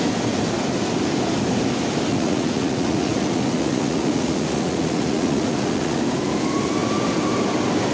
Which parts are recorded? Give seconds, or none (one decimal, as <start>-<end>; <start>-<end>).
0.0-2.1; 6.0-7.9

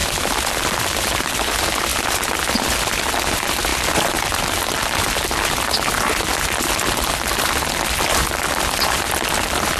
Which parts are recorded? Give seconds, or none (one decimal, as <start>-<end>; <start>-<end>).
0.0-9.8